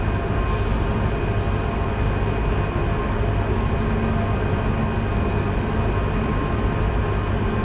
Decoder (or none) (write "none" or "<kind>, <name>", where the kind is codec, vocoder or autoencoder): none